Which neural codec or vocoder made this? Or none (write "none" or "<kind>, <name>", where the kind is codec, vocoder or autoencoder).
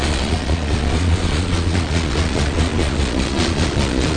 vocoder, Vocos